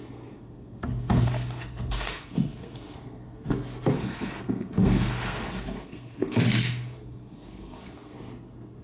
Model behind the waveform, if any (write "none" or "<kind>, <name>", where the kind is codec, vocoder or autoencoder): codec, SNAC